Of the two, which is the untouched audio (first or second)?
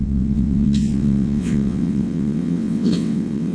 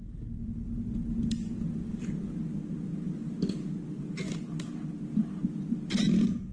second